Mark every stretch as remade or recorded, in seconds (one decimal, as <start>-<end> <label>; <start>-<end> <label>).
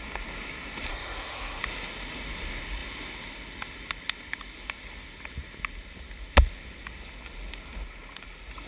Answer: 0.0-0.9 recorded; 0.9-1.6 remade; 1.6-8.7 recorded